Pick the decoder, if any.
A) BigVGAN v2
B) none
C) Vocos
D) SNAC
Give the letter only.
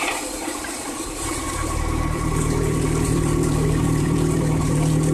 A